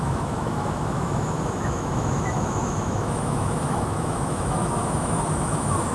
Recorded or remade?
remade